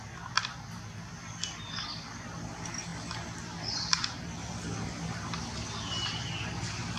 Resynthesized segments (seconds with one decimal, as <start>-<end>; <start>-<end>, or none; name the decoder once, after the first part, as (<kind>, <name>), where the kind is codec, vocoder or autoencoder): 2.9-7.0 (vocoder, BigVGAN v2)